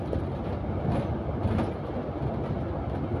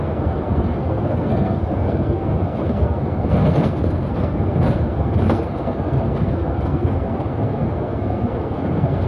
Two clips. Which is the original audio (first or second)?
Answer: first